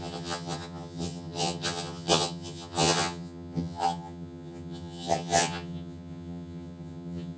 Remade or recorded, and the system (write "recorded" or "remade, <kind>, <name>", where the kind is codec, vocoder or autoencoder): remade, vocoder, HiFi-GAN